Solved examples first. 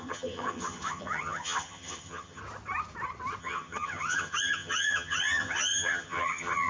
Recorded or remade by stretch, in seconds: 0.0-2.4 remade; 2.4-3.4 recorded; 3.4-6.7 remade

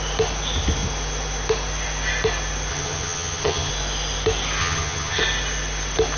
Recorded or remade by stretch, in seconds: 0.0-2.7 recorded; 2.7-3.7 remade; 3.7-4.6 recorded; 4.6-5.2 remade; 5.2-6.2 recorded

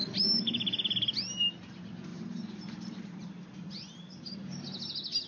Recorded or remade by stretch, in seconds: 0.0-5.3 recorded

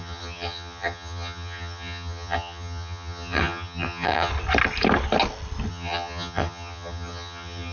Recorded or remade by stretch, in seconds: 0.0-4.3 remade; 4.3-5.7 recorded; 5.7-7.7 remade

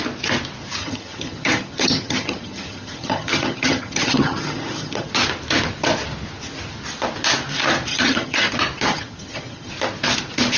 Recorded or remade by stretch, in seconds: 0.0-0.8 recorded; 0.8-5.1 remade; 5.1-7.9 recorded; 7.9-8.5 remade; 8.5-8.9 recorded; 8.9-9.7 remade; 9.7-10.6 recorded

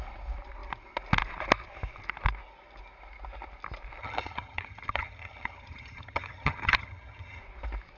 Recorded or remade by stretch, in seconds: 0.0-4.0 recorded; 4.0-7.4 remade; 7.4-8.0 recorded